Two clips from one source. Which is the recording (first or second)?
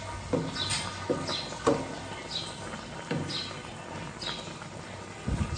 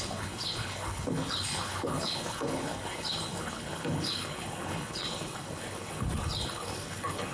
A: first